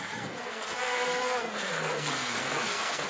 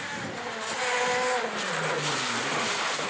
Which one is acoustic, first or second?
second